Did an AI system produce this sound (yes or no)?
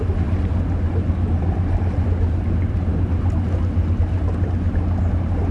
no